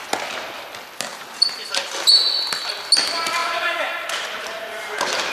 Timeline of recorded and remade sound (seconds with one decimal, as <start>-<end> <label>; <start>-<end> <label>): 0.0-1.1 recorded; 1.1-1.9 remade; 1.9-3.4 recorded; 3.4-5.3 remade